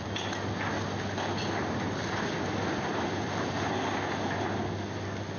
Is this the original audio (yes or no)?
yes